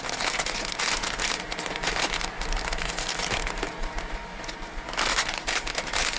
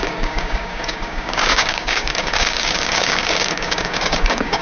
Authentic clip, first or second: first